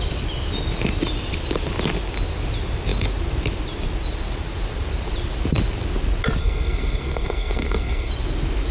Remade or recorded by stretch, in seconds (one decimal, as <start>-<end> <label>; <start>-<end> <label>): 0.0-6.4 recorded; 6.4-8.1 remade; 8.1-8.7 recorded